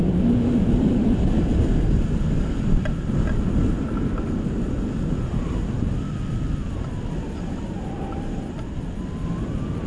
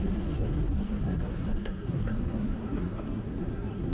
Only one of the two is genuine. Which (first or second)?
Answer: first